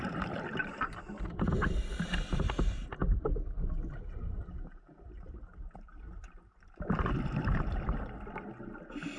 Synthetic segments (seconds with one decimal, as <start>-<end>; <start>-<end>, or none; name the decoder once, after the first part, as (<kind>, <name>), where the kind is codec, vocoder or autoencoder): none